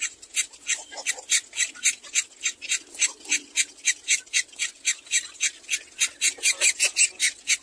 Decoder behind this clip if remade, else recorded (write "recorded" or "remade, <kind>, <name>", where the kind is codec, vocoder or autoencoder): recorded